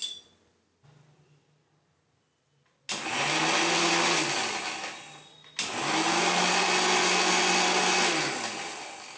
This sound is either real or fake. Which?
real